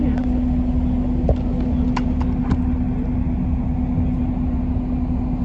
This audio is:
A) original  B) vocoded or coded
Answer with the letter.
A